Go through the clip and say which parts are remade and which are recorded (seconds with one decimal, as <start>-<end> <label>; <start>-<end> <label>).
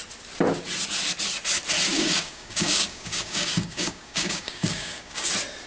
0.0-1.9 recorded; 1.9-5.3 remade; 5.3-5.7 recorded